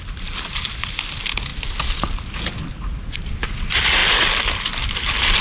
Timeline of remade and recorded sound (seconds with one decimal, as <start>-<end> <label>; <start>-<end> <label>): 0.0-5.4 recorded